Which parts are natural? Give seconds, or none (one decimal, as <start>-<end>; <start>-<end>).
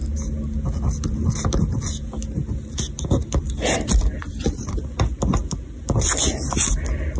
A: 0.0-7.2